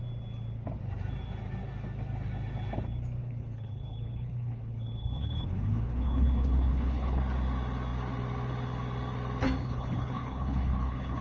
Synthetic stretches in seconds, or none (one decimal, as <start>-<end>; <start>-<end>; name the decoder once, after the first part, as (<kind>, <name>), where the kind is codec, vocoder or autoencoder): 3.2-7.2 (codec, HILCodec); 9.6-11.2